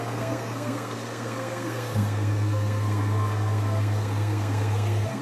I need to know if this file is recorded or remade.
remade